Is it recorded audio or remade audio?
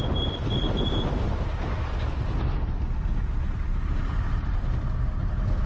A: recorded